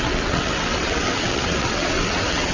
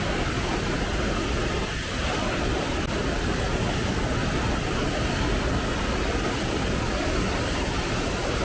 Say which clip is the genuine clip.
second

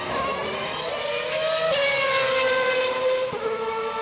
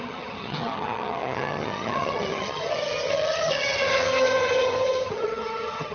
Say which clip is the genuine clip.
first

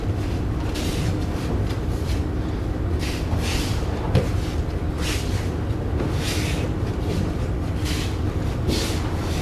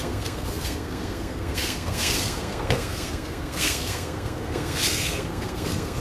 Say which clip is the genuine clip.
first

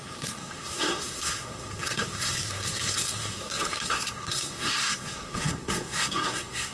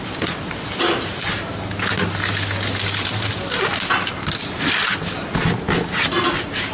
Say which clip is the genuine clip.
second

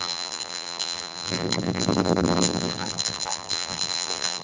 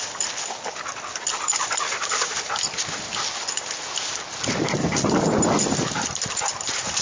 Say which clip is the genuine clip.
second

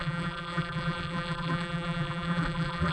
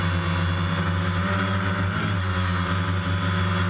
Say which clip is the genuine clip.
second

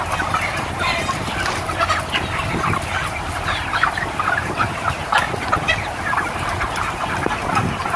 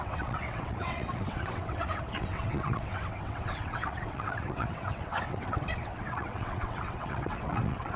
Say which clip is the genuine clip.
first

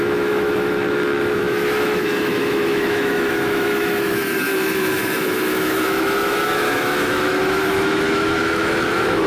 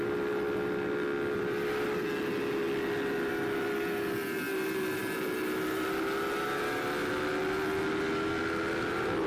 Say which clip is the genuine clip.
second